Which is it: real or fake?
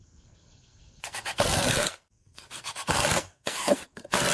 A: fake